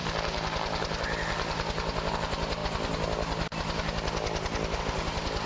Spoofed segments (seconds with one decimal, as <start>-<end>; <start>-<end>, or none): none